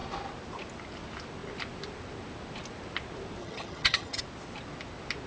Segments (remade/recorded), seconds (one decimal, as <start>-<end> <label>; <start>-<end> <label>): 0.0-3.4 recorded; 3.4-4.2 remade; 4.2-5.3 recorded